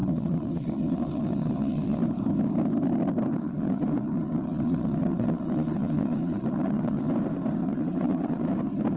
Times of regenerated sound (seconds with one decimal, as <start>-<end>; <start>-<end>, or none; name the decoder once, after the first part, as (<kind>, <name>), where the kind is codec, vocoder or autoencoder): 0.0-2.0 (vocoder, Vocos); 3.3-7.1; 7.6-8.5